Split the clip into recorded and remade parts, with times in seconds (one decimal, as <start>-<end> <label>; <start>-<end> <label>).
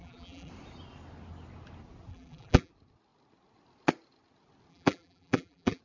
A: 0.0-0.5 remade; 0.5-2.1 recorded; 2.1-2.7 remade; 2.7-4.7 recorded; 4.7-5.8 remade